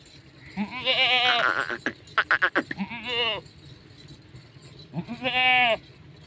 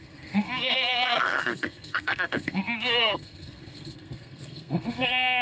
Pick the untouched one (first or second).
first